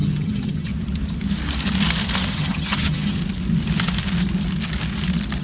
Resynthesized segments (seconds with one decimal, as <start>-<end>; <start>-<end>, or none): 0.0-0.7; 2.3-3.2